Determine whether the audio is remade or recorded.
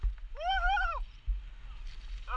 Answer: recorded